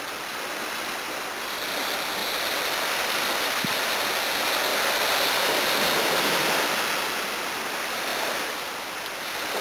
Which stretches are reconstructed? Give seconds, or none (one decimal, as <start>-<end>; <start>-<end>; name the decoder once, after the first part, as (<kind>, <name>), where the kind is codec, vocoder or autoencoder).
2.2-2.9 (vocoder, BigVGAN v2); 4.7-6.7; 8.1-8.9